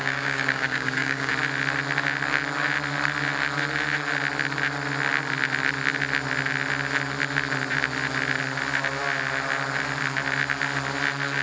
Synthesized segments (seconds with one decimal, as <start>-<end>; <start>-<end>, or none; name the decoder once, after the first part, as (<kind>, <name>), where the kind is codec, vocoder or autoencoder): 0.0-1.3 (codec, DAC)